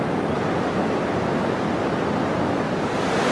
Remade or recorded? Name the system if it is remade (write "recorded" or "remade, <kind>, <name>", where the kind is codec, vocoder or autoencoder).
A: recorded